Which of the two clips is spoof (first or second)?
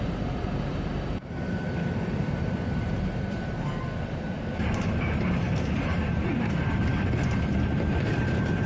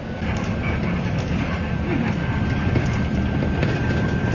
first